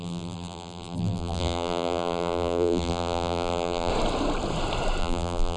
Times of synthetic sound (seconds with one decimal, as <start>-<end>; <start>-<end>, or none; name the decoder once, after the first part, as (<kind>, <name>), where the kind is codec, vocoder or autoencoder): 0.0-3.9 (vocoder, BigVGAN v2); 5.0-5.6